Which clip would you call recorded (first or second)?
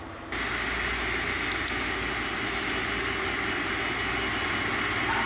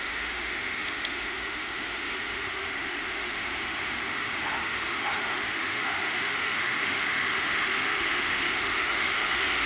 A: first